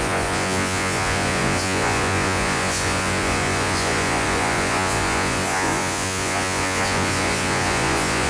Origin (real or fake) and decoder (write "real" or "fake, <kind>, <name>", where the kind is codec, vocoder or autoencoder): fake, vocoder, Vocos